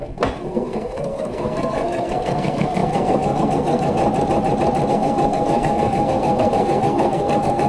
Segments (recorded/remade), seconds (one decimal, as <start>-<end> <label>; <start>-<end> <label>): 0.0-4.0 remade; 4.0-4.9 recorded; 4.9-7.7 remade